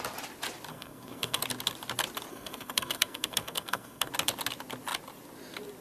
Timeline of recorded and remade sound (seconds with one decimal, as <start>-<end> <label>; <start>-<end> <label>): 0.0-0.7 recorded; 0.7-1.4 remade; 1.4-2.3 recorded; 2.3-4.1 remade; 4.1-5.8 recorded